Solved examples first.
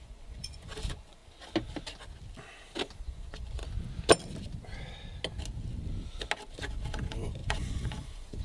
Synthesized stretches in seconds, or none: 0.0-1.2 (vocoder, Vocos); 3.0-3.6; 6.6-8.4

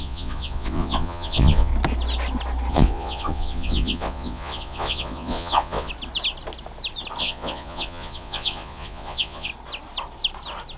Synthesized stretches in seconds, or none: 0.0-1.7 (vocoder, Vocos); 2.7-5.9; 7.2-9.5

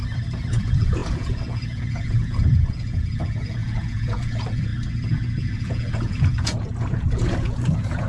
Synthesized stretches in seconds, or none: 0.5-4.7 (vocoder, Vocos); 5.4-8.1

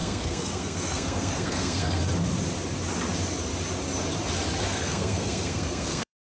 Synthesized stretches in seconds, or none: 0.0-2.0 (codec, SNAC); 4.7-6.3

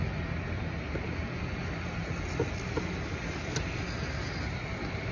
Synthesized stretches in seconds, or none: none

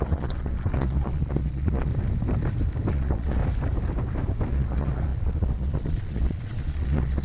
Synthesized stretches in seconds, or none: 0.0-1.9 (vocoder, Vocos); 2.9-3.4; 4.5-7.2